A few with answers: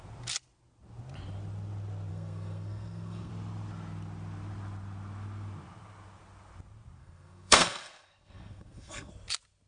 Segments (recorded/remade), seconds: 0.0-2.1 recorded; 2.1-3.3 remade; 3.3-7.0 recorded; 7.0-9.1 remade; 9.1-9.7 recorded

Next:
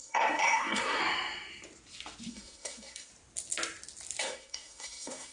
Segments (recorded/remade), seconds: 0.0-1.0 remade; 1.0-2.3 recorded; 2.3-3.1 remade; 3.1-4.2 recorded; 4.2-5.3 remade

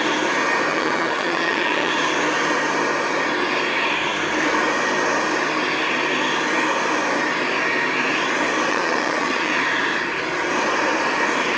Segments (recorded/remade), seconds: 0.0-0.7 recorded; 0.7-1.9 remade; 1.9-8.7 recorded; 8.7-9.5 remade; 9.5-11.6 recorded

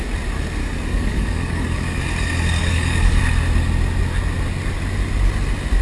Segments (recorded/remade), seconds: 0.0-0.6 recorded; 0.6-2.0 remade; 2.0-2.6 recorded; 2.6-3.2 remade; 3.2-5.8 recorded